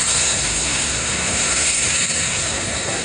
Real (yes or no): no